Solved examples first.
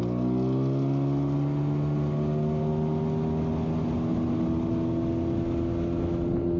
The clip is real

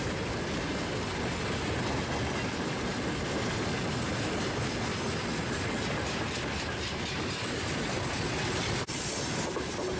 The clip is real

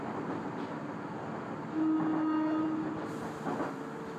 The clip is real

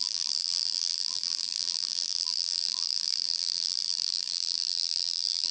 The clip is fake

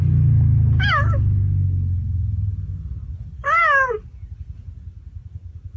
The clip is real